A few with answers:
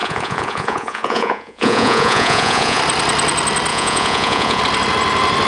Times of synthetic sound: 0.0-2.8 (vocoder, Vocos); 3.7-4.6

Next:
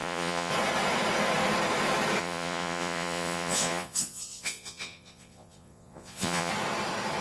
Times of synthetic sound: 0.0-0.5 (vocoder, Vocos); 2.2-6.5

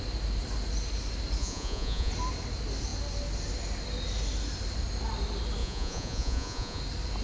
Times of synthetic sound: 1.4-2.1 (vocoder, Vocos); 5.6-6.8

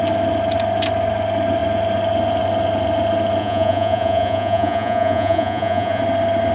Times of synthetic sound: 3.4-6.0 (vocoder, Vocos)

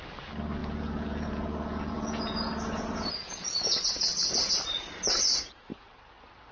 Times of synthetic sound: 0.6-4.5 (vocoder, Vocos)

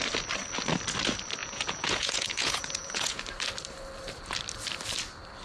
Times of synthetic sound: 1.4-3.2 (vocoder, Vocos)

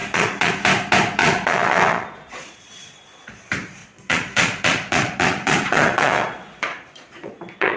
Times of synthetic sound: 0.0-0.5 (vocoder, Vocos); 1.2-3.4; 3.8-7.8

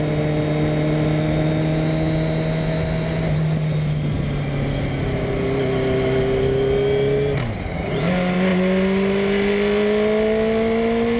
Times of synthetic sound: none